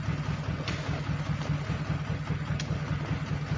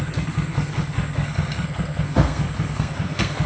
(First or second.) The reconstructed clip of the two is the second